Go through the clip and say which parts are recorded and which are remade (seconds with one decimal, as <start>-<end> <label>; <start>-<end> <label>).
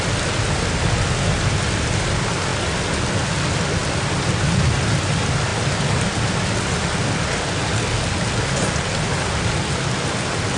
0.0-10.6 recorded